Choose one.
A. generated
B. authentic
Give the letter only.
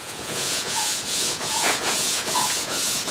A